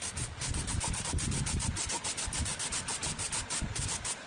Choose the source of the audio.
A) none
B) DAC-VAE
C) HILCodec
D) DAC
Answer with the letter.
A